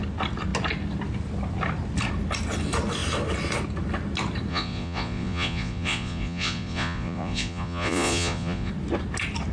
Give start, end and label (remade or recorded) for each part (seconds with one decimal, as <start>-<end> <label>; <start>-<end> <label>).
0.0-4.5 recorded; 4.5-8.7 remade; 8.7-9.5 recorded